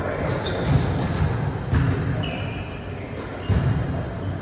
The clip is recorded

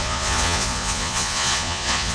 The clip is remade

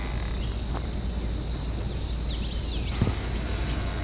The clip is recorded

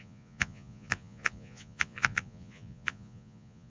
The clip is remade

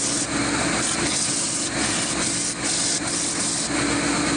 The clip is recorded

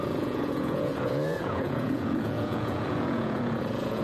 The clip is remade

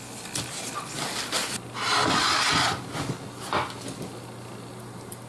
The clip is recorded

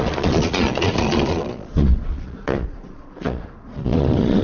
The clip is remade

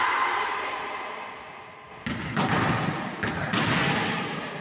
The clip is recorded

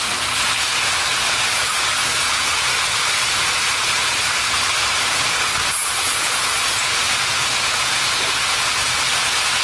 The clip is remade